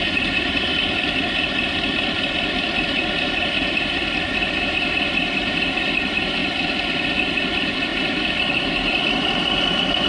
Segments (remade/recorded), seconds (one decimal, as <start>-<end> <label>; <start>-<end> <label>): 0.0-0.7 remade; 0.7-3.2 recorded; 3.2-6.4 remade; 6.4-7.2 recorded; 7.2-10.1 remade